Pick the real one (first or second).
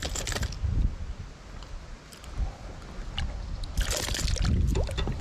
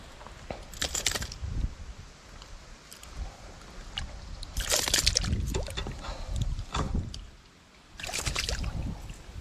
first